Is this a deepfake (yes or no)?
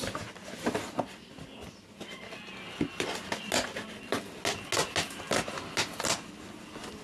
no